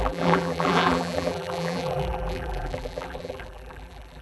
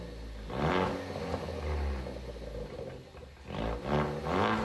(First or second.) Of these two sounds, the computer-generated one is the first